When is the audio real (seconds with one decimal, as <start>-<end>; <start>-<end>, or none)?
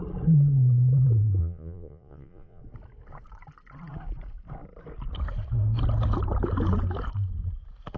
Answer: 0.0-1.4; 2.6-8.0